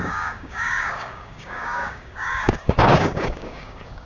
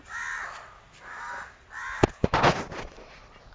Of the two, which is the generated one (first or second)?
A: first